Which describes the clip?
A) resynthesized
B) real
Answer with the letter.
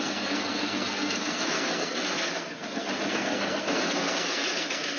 A